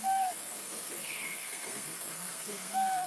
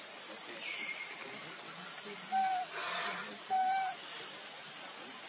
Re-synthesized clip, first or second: first